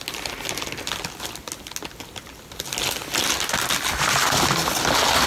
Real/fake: real